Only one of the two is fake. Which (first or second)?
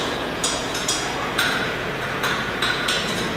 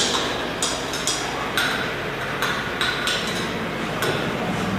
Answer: first